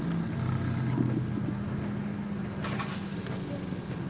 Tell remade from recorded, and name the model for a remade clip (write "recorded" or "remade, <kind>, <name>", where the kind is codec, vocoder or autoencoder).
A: recorded